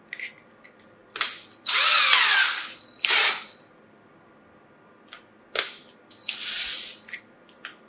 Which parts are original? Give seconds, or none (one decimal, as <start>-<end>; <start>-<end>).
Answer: 0.0-7.9